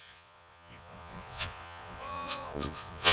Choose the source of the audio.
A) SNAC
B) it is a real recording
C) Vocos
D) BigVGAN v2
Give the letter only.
C